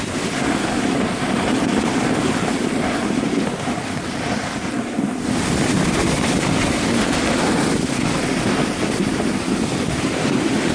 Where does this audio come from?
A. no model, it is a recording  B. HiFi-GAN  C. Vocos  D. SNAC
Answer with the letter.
A